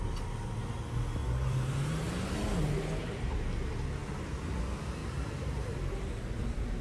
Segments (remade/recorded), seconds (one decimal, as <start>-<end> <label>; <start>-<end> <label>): 0.0-1.2 recorded; 1.2-3.4 remade; 3.4-5.0 recorded; 5.0-6.8 remade